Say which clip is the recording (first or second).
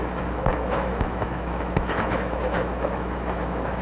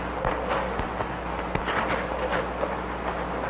second